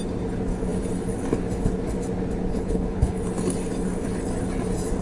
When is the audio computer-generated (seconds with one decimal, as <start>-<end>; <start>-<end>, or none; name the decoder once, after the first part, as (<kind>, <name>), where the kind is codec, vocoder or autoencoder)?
2.5-3.2 (codec, HILCodec)

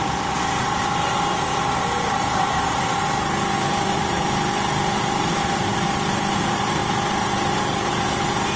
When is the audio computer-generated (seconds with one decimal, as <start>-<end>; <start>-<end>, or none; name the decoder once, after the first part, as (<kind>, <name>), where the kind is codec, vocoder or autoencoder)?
0.0-5.7 (vocoder, BigVGAN v2); 6.3-6.8

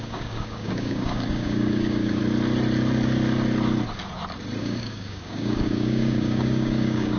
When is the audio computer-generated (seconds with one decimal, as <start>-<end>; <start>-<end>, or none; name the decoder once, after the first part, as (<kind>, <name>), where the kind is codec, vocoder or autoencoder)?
0.0-2.2 (codec, DAC); 4.6-7.2